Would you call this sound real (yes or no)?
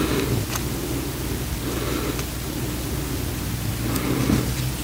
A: yes